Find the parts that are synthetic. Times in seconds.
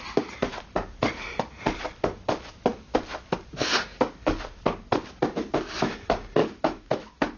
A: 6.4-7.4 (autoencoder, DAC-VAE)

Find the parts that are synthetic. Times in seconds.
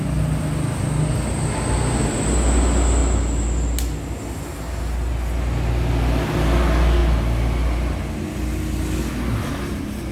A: none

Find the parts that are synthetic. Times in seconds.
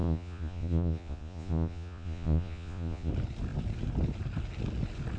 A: 0.0-3.1 (vocoder, Vocos)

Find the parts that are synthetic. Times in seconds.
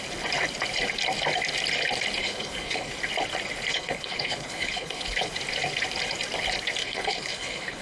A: 2.2-2.9 (codec, HILCodec); 3.7-5.3; 6.8-7.8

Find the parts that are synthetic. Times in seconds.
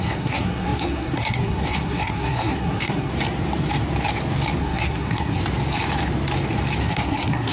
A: 0.0-3.1 (codec, SNAC); 4.6-5.4; 6.8-7.5